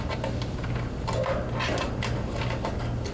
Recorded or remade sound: recorded